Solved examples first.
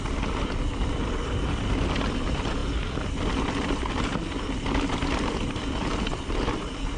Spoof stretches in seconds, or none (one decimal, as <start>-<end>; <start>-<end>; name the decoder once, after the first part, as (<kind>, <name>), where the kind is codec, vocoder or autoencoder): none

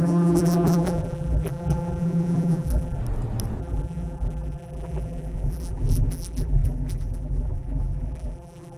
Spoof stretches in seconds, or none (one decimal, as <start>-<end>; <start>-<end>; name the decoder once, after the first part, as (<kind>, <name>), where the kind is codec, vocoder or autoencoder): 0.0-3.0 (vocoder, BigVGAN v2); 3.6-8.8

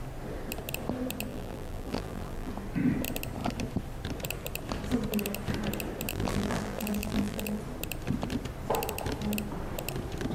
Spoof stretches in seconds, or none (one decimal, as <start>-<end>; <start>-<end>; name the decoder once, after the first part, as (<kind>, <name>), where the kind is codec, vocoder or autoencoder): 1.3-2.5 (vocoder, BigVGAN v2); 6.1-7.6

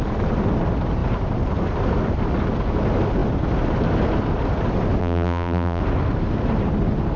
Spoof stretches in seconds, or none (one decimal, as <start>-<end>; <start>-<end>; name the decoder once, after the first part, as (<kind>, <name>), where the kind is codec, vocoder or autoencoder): 5.0-5.8 (vocoder, BigVGAN v2)

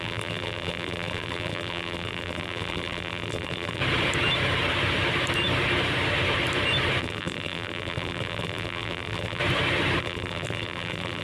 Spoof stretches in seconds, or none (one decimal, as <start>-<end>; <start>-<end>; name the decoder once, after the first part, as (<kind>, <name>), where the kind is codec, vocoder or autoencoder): 0.0-3.8 (vocoder, BigVGAN v2); 7.0-9.4; 10.0-11.2